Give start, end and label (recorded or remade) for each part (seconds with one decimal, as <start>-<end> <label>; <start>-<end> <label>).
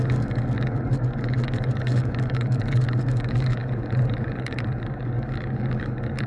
0.0-6.3 remade